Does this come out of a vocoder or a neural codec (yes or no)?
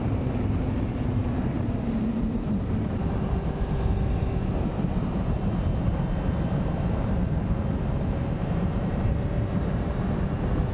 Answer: yes